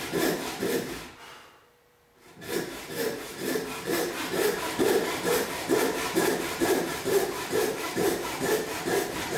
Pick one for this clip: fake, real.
fake